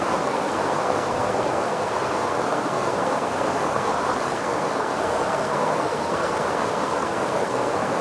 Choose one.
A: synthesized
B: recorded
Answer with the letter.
A